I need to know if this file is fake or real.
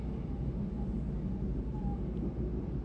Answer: real